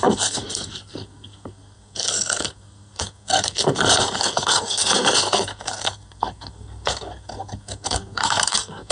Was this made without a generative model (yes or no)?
no